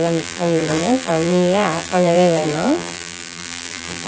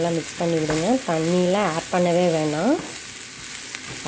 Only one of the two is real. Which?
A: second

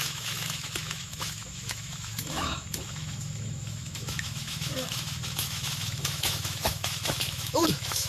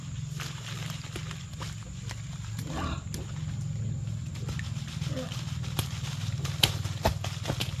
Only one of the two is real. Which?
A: second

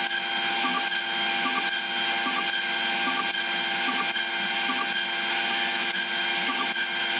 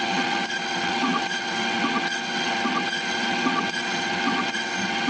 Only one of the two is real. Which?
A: first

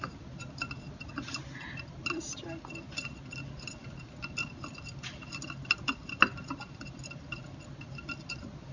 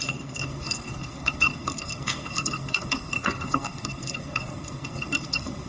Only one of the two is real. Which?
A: first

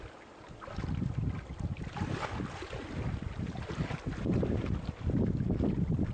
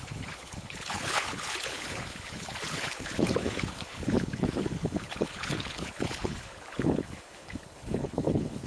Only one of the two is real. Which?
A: first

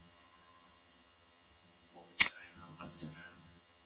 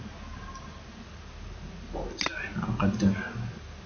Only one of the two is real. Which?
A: second